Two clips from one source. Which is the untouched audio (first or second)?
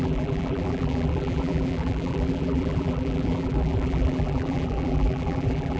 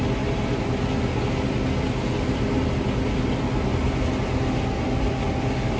second